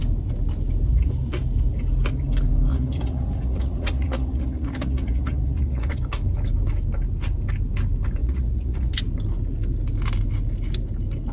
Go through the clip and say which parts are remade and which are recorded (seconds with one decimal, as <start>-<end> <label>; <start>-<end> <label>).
0.0-2.7 recorded; 2.7-6.0 remade; 6.0-8.2 recorded; 8.2-8.9 remade; 8.9-11.3 recorded

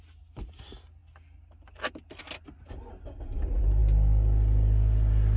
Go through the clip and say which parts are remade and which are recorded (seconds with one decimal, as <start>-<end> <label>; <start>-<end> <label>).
0.0-5.4 recorded

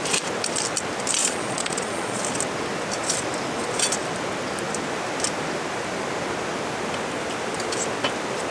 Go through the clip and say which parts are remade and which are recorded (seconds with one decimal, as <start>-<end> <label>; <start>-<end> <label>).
0.0-1.2 recorded; 1.2-2.2 remade; 2.2-8.5 recorded